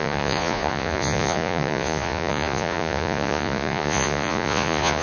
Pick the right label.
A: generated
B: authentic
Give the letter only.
A